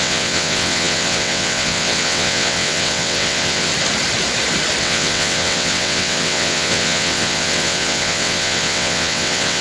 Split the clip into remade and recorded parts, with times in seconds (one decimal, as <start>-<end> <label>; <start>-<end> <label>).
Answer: 0.0-3.7 remade; 3.7-4.8 recorded; 4.8-9.6 remade